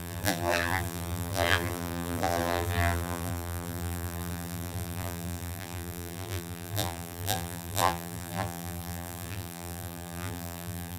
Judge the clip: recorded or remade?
remade